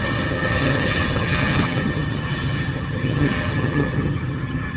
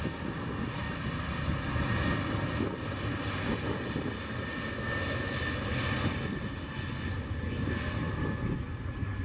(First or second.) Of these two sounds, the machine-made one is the first